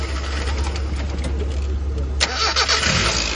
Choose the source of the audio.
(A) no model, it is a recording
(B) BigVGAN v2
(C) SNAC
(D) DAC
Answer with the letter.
A